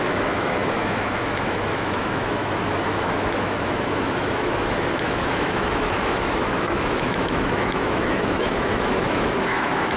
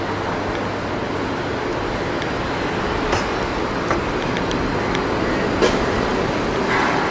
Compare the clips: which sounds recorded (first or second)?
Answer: second